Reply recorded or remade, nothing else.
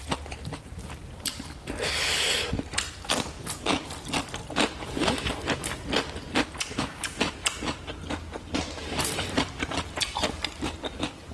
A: recorded